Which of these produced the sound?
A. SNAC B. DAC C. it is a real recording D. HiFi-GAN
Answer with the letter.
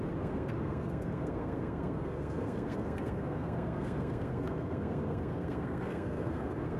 A